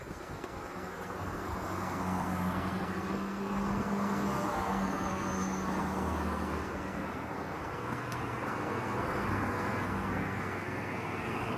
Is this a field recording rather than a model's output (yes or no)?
no